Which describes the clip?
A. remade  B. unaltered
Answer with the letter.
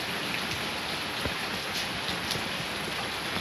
B